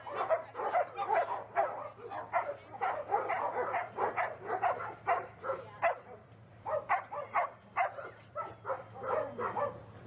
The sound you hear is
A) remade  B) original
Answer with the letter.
A